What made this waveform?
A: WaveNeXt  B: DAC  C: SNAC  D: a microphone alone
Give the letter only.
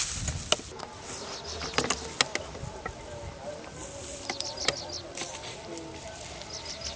D